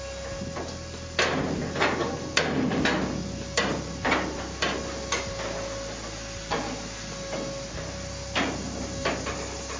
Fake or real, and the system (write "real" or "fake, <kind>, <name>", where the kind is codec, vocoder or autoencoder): real